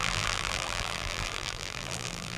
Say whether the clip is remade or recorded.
remade